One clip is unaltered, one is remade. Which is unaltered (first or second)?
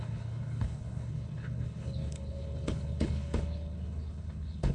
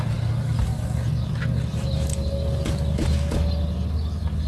second